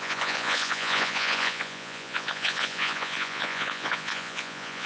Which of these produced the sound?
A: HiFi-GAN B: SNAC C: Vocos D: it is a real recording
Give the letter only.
C